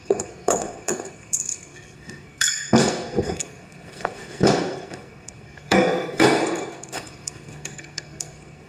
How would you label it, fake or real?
fake